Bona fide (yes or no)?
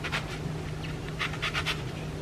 yes